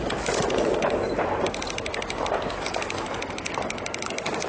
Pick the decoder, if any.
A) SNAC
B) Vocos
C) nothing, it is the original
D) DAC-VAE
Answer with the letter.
C